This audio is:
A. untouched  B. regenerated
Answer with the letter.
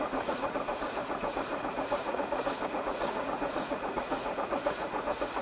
B